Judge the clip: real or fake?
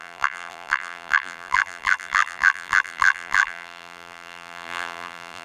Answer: fake